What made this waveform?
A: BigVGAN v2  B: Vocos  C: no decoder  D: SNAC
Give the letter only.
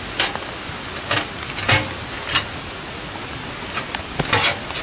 C